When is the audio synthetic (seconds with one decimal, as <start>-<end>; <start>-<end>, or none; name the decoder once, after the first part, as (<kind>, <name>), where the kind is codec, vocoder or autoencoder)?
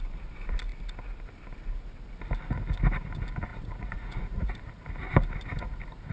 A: 3.5-4.5 (vocoder, Vocos)